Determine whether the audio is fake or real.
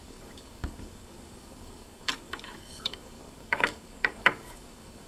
fake